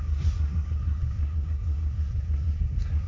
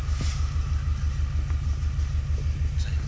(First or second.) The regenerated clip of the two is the first